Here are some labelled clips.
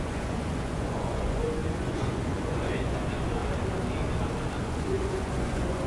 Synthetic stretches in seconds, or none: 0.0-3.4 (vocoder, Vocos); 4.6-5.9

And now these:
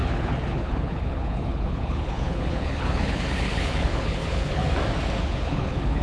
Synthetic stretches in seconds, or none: 0.0-4.6 (codec, HILCodec); 5.2-6.0

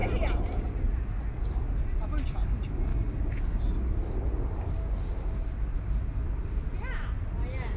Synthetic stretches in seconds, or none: 2.9-3.6 (codec, DAC)

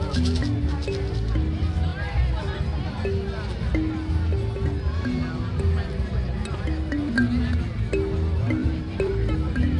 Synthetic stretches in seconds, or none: 8.6-9.1 (vocoder, BigVGAN v2)

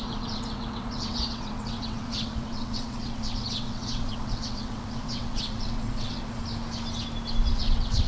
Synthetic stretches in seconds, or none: 0.0-6.4 (vocoder, WaveNeXt); 7.5-8.1

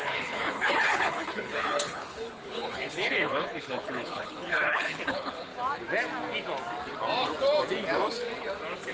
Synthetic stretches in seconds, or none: 0.0-5.5 (codec, HILCodec)